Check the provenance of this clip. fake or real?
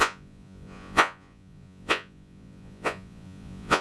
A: fake